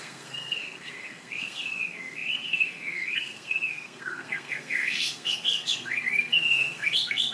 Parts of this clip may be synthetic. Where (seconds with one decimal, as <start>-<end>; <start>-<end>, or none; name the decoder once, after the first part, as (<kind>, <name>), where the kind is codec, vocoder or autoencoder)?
0.0-7.3 (codec, SNAC)